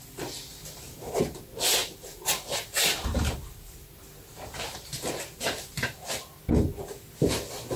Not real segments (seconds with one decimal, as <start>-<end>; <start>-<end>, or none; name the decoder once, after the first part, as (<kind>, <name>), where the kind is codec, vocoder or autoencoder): 0.5-1.2 (vocoder, BigVGAN v2); 1.8-6.1